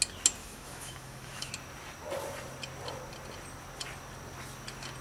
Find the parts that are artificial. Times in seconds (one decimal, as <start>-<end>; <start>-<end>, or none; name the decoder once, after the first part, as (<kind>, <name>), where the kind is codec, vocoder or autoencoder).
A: 0.4-1.5 (autoencoder, DAC-VAE)